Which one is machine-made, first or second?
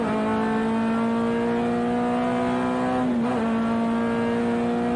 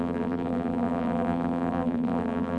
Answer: second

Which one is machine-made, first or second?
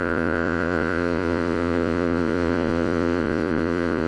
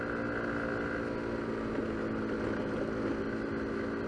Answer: first